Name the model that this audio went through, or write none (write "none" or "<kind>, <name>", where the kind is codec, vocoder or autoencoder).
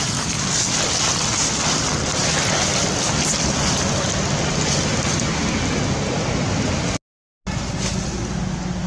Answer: none